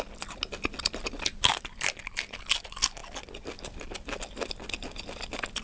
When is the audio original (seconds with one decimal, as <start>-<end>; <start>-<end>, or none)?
0.0-5.6